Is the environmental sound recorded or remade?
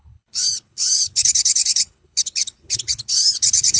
remade